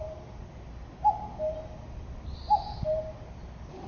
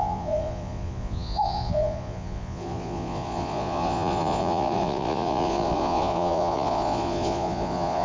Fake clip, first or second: second